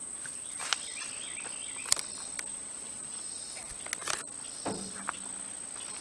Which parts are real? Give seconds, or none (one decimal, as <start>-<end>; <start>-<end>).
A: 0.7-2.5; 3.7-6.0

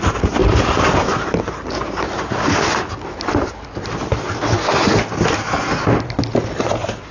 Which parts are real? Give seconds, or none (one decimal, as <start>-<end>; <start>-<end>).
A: 0.0-7.1

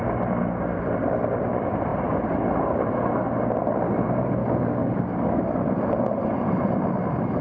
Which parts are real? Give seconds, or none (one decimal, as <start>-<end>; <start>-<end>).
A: 0.0-4.4; 5.4-7.4

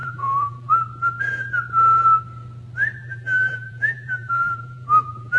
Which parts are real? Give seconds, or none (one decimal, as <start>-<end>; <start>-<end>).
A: 0.7-3.0

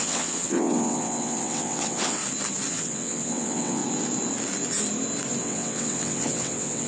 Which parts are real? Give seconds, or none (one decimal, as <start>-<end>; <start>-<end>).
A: 2.2-2.7; 3.8-5.4

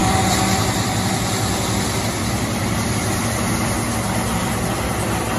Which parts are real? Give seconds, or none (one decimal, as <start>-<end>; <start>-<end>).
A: 3.2-5.4

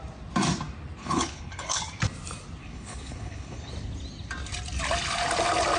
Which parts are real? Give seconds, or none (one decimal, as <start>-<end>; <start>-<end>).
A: 0.0-1.0; 1.8-2.6; 3.7-5.8